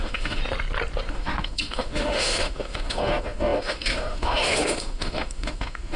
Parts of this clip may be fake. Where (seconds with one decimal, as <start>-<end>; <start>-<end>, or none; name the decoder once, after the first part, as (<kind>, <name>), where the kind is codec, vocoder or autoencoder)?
0.0-0.4 (autoencoder, DAC-VAE); 1.1-6.0